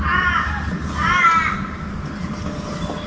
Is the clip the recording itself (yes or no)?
yes